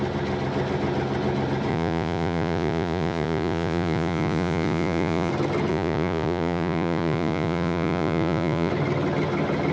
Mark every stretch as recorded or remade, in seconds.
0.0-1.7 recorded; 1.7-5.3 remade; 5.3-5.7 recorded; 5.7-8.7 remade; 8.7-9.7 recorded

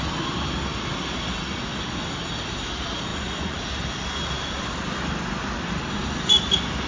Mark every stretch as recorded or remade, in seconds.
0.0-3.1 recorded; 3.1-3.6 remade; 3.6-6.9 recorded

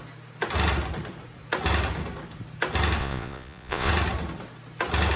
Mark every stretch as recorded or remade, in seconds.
0.0-3.0 recorded; 3.0-3.9 remade; 3.9-5.2 recorded

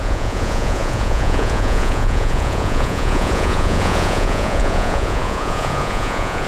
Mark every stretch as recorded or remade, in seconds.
0.0-6.5 remade

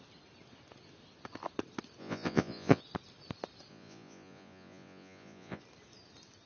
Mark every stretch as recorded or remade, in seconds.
0.0-2.0 recorded; 2.0-2.8 remade; 2.8-3.7 recorded; 3.7-5.6 remade; 5.6-6.5 recorded